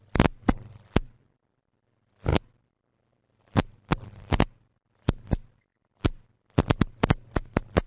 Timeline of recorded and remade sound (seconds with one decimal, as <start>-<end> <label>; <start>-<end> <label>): 0.0-7.9 recorded